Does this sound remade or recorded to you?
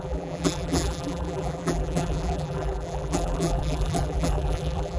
remade